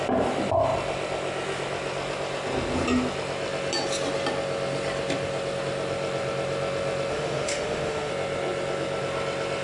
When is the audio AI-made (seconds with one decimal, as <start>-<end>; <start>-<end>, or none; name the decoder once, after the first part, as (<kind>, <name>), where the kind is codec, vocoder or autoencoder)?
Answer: 7.1-8.1 (autoencoder, DAC-VAE)